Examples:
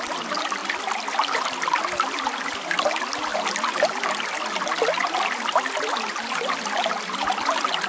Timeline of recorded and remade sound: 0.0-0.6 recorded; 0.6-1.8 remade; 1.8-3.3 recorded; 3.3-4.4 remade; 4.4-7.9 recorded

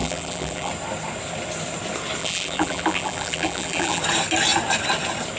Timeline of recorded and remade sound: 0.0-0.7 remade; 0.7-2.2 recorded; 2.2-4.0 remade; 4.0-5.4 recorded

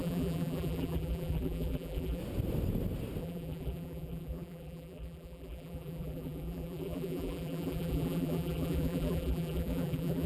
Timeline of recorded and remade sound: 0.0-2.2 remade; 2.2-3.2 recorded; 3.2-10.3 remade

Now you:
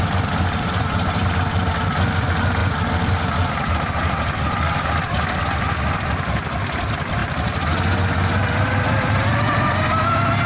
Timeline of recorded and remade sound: 0.0-7.2 remade; 7.2-8.0 recorded; 8.0-10.5 remade

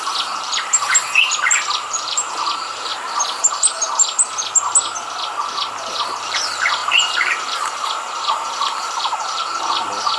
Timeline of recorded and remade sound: 0.0-2.9 remade; 2.9-6.2 recorded; 6.2-10.2 remade